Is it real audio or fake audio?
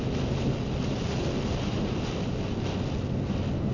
real